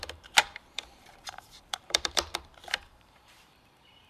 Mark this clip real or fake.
fake